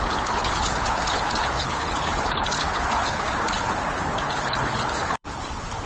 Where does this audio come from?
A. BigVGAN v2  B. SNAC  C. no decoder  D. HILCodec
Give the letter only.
D